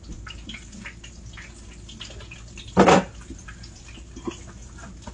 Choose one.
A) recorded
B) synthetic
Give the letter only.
A